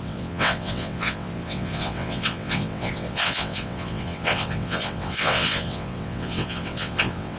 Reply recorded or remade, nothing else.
remade